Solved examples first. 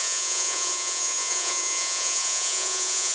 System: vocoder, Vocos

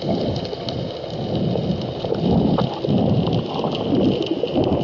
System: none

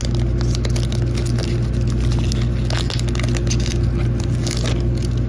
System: none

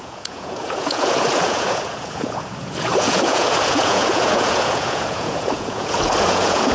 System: vocoder, Vocos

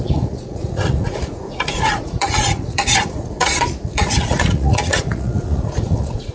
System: vocoder, Vocos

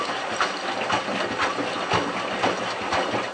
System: none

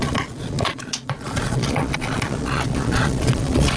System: vocoder, Vocos